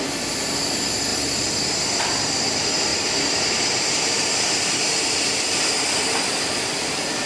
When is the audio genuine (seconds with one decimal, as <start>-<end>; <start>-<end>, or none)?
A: 0.0-1.1; 2.0-2.9